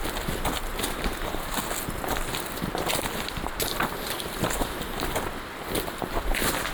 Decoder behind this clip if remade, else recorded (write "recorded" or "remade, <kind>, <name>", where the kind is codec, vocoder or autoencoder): recorded